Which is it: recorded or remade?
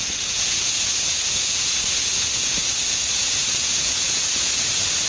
remade